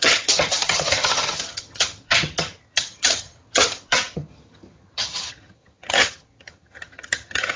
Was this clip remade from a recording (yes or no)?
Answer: yes